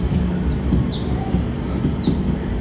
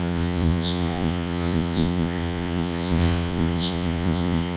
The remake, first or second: second